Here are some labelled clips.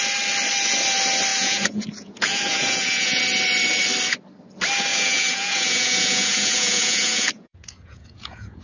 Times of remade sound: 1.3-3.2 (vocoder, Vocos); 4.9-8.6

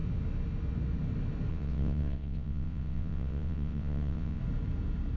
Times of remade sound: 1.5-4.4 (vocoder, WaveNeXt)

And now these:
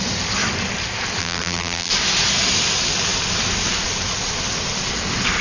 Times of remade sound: 1.2-1.9 (vocoder, BigVGAN v2)

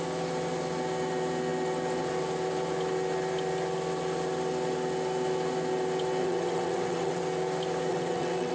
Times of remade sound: 6.2-7.2 (vocoder, WaveNeXt); 7.9-8.5

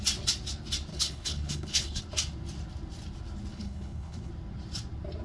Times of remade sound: 0.9-2.0 (codec, HILCodec); 3.5-4.3

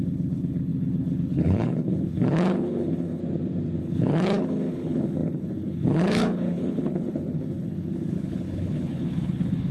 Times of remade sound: 0.0-3.2 (codec, HILCodec); 3.8-9.7